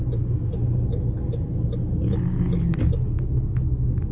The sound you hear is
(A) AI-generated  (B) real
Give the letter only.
B